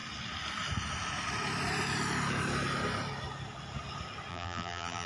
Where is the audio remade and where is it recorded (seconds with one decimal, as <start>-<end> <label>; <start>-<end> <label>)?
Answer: 0.0-4.3 recorded; 4.3-5.1 remade